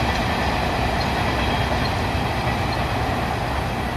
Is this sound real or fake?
real